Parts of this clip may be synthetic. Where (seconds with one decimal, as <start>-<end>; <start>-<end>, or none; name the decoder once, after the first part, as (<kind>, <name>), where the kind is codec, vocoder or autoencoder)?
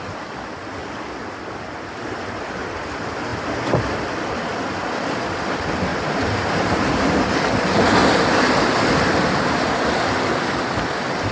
5.9-6.9 (vocoder, BigVGAN v2)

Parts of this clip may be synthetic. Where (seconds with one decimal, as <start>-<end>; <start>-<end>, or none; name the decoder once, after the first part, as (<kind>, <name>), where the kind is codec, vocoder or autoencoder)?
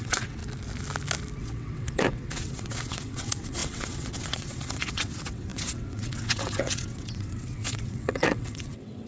0.0-0.4 (vocoder, WaveNeXt); 1.4-9.1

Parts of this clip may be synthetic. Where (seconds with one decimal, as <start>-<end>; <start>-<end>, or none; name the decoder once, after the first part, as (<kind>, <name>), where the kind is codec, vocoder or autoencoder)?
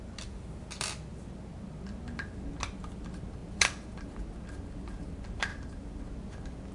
5.5-6.0 (vocoder, BigVGAN v2)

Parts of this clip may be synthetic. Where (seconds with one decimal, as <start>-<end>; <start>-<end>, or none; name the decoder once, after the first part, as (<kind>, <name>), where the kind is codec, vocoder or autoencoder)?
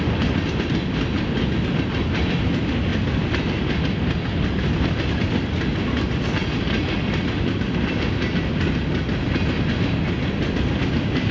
none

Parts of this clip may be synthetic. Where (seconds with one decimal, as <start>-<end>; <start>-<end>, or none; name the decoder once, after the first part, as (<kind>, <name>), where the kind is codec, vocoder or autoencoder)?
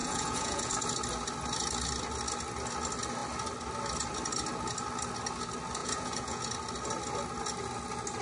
0.0-0.7 (vocoder, Vocos); 5.8-6.5